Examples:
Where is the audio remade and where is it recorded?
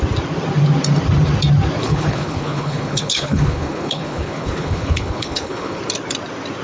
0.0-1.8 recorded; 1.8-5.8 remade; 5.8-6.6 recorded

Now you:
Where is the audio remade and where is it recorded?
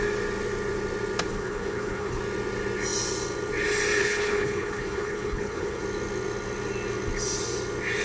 0.0-1.3 recorded; 1.3-2.2 remade; 2.2-4.0 recorded; 4.0-5.8 remade; 5.8-8.0 recorded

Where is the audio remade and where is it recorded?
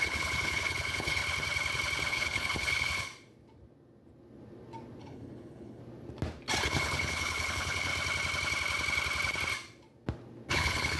0.0-1.2 remade; 1.2-2.1 recorded; 2.1-3.1 remade; 3.1-5.0 recorded; 5.0-5.8 remade; 5.8-6.6 recorded; 6.6-7.9 remade; 7.9-10.5 recorded; 10.5-11.0 remade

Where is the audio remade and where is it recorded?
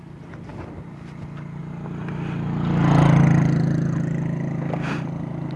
0.0-5.6 recorded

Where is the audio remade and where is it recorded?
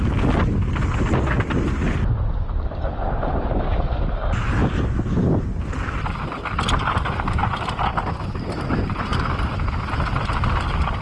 0.0-11.0 recorded